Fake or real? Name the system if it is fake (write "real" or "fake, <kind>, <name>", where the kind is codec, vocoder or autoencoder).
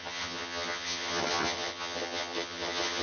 fake, vocoder, HiFi-GAN